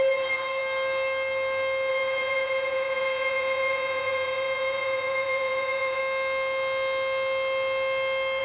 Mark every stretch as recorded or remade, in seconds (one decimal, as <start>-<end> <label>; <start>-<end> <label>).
0.0-0.6 remade; 0.6-1.9 recorded; 1.9-6.0 remade; 6.0-8.4 recorded